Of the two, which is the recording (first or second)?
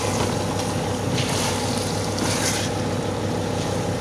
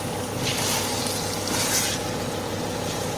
second